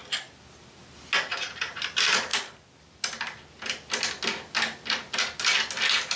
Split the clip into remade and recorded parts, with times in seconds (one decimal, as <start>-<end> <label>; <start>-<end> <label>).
0.0-1.3 recorded; 1.3-1.8 remade; 1.8-6.2 recorded